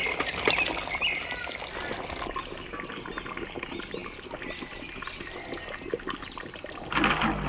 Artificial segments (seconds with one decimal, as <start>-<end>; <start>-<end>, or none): none